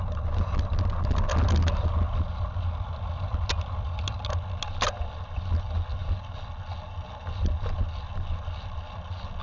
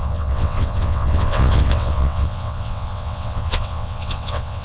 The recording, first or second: first